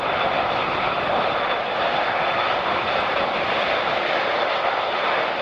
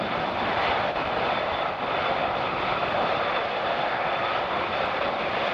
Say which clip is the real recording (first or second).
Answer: first